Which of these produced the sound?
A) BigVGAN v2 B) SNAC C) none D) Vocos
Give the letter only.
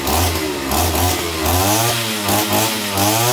C